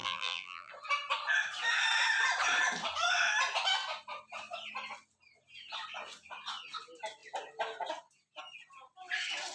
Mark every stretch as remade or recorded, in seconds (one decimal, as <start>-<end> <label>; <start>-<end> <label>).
0.0-0.7 remade; 0.7-9.5 recorded